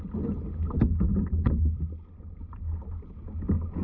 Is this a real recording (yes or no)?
yes